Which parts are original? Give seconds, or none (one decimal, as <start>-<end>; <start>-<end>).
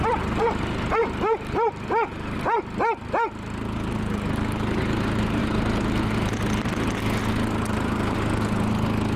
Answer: 0.0-9.2